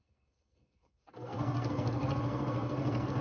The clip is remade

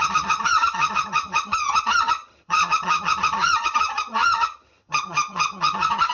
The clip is remade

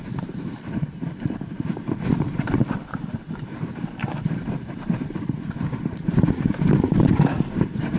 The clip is remade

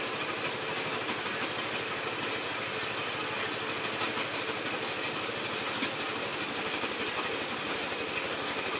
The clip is recorded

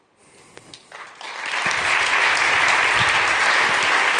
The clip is recorded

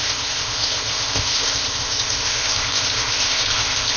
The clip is remade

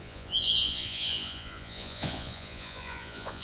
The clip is remade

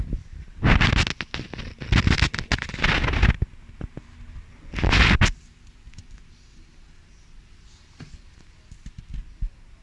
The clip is recorded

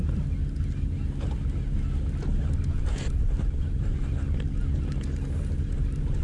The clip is recorded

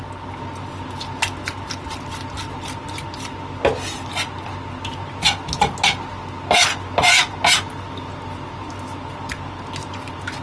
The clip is recorded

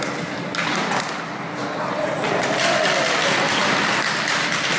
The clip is recorded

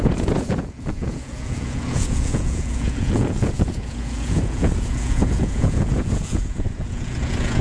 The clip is remade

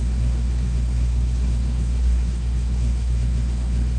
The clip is remade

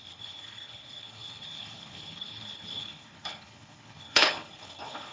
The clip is remade